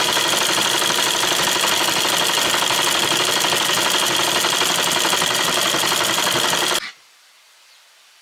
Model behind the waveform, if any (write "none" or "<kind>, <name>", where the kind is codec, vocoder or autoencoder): none